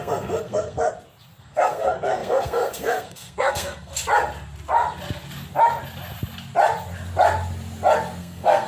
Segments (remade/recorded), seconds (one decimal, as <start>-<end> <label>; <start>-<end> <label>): 0.0-0.9 remade; 0.9-1.4 recorded; 1.4-3.9 remade; 3.9-8.2 recorded; 8.2-8.7 remade